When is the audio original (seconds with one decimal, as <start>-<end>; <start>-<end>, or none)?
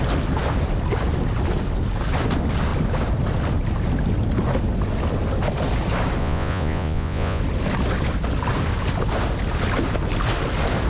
0.0-6.2; 7.4-10.9